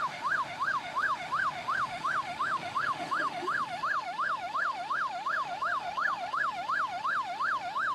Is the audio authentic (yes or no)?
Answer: no